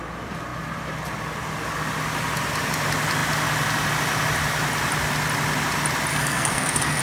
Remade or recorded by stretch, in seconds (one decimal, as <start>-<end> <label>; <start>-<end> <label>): 0.0-6.1 recorded; 6.1-7.0 remade